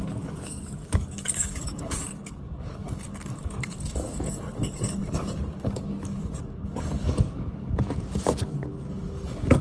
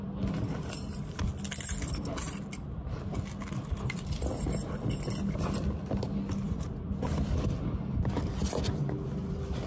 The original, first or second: second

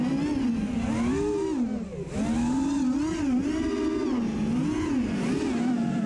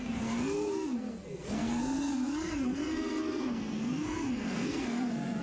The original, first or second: first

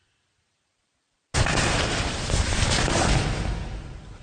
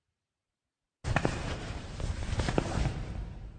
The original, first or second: first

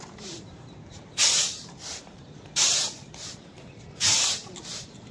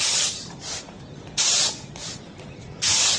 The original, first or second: second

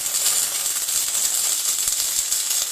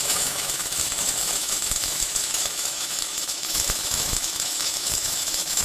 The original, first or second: first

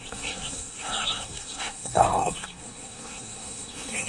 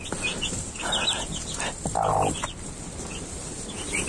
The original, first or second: second